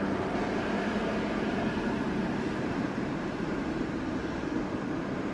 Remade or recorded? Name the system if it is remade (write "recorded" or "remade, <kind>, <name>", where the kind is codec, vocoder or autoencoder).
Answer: remade, vocoder, BigVGAN v2